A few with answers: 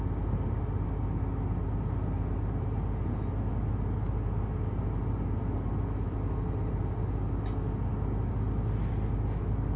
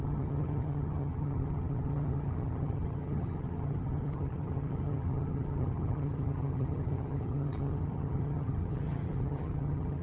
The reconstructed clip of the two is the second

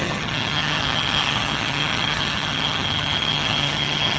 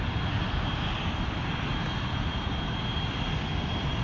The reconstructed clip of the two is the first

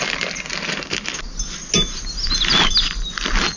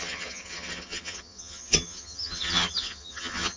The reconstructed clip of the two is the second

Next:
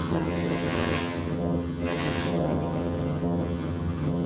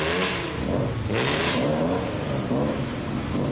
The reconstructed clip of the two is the first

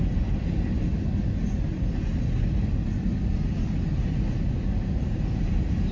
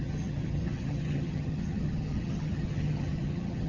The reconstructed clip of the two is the second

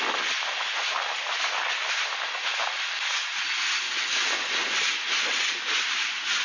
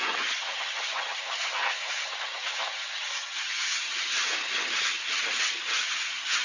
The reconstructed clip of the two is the second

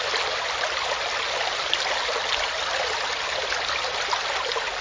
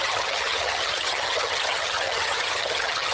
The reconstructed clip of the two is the second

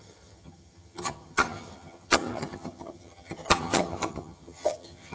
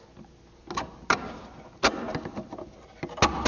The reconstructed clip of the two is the first